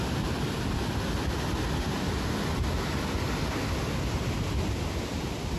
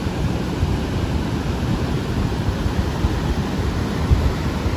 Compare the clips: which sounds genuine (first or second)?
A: first